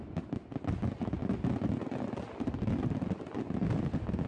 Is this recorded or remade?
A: recorded